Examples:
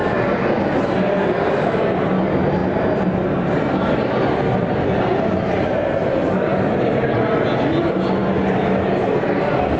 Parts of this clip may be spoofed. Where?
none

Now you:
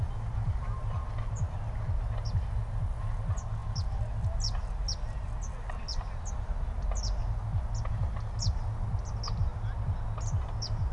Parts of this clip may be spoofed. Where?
none

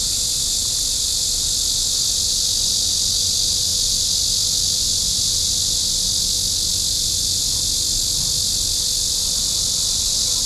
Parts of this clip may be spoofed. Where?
none